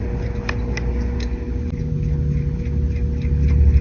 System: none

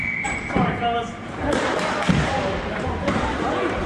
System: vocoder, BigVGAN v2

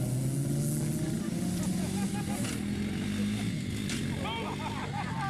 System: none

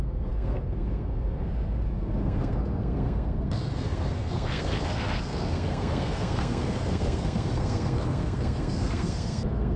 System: codec, SNAC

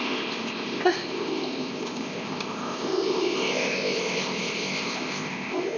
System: codec, ZipCodec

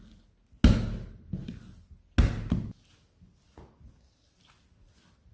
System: none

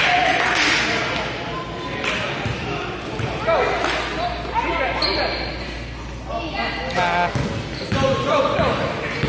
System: none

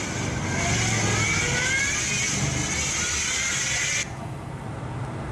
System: none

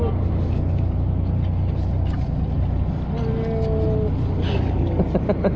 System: none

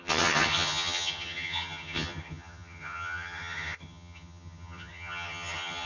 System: vocoder, HiFi-GAN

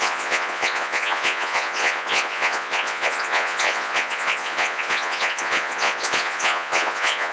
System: vocoder, Vocos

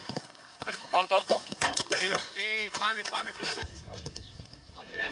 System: codec, SNAC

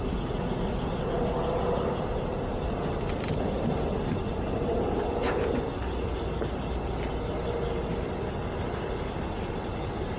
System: none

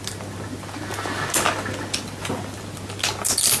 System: none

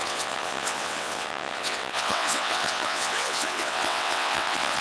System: vocoder, WaveNeXt